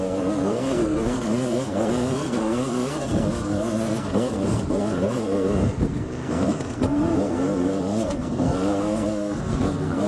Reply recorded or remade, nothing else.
remade